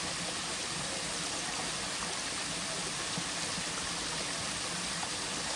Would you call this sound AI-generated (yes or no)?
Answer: no